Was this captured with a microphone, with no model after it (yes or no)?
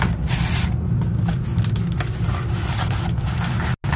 yes